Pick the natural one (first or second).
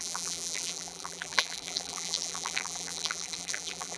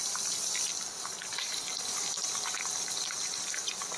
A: second